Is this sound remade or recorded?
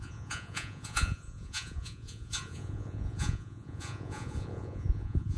remade